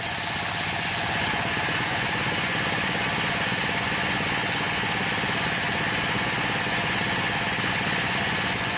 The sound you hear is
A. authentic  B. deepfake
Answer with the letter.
B